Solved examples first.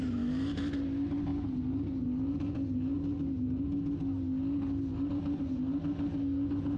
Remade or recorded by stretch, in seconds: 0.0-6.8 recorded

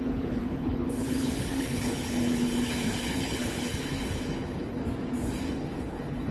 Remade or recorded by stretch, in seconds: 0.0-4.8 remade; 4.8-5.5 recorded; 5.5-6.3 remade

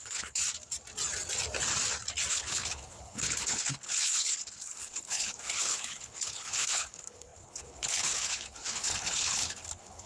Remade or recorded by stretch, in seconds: 0.0-0.4 remade; 0.4-2.3 recorded; 2.3-10.1 remade

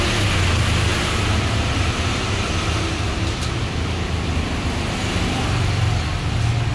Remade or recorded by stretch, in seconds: 0.0-6.7 recorded

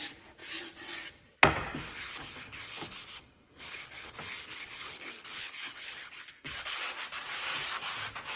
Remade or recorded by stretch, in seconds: 0.0-1.8 recorded; 1.8-6.8 remade; 6.8-8.4 recorded

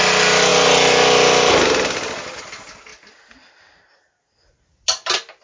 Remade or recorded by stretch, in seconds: 0.0-5.4 recorded

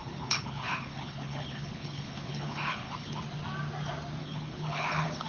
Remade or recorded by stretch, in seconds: 0.0-3.2 remade; 3.2-4.2 recorded; 4.2-5.3 remade